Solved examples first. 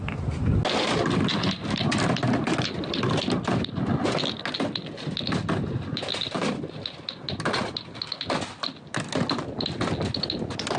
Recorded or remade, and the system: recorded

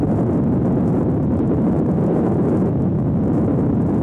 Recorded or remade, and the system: remade, vocoder, BigVGAN v2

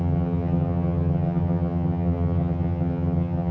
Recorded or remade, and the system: remade, vocoder, HiFi-GAN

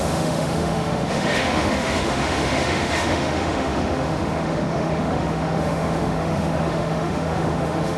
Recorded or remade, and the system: remade, autoencoder, DAC-VAE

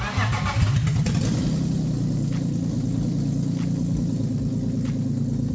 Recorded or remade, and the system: recorded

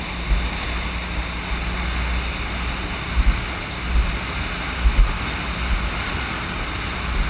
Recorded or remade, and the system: recorded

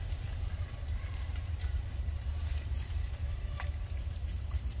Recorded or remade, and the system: remade, vocoder, BigVGAN v2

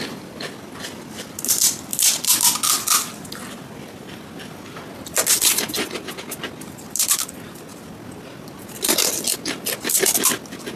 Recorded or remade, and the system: recorded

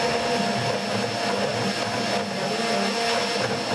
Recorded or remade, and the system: recorded